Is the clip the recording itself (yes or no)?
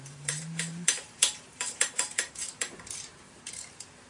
no